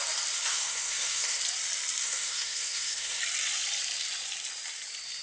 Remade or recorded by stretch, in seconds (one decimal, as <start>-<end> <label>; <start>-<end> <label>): 0.0-0.5 recorded; 0.5-1.4 remade; 1.4-2.0 recorded; 2.0-3.2 remade; 3.2-5.2 recorded